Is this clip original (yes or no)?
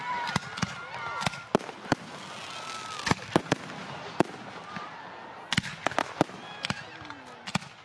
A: yes